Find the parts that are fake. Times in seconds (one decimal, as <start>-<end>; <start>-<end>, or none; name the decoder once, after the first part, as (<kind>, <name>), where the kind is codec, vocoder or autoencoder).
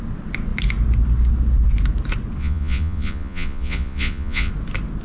2.4-4.5 (vocoder, Vocos)